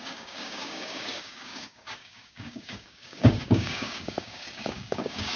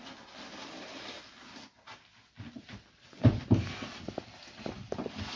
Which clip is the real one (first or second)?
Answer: second